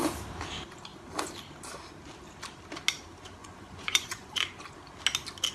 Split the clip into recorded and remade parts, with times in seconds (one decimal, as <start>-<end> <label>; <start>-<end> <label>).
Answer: 0.0-3.4 recorded; 3.4-4.8 remade; 4.8-5.5 recorded